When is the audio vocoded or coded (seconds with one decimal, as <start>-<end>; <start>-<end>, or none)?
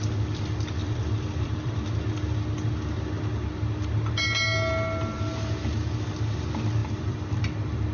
0.8-1.9; 6.8-7.4